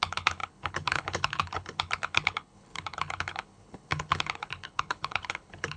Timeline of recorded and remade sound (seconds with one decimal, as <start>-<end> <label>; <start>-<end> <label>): 0.0-5.8 remade